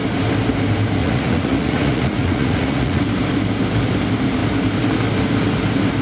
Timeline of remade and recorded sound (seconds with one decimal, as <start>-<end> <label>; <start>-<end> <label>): 0.0-1.0 recorded; 1.0-3.0 remade; 3.0-6.0 recorded